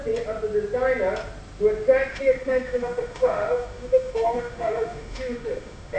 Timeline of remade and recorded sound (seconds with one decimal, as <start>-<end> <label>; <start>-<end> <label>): 0.0-2.1 recorded; 2.1-6.0 remade